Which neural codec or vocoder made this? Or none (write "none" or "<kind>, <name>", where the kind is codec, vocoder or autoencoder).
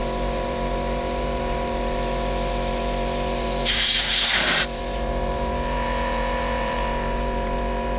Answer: vocoder, BigVGAN v2